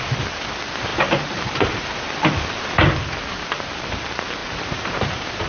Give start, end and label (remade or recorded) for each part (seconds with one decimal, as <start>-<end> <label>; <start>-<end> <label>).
0.0-0.9 recorded; 0.9-2.0 remade; 2.0-4.4 recorded; 4.4-5.5 remade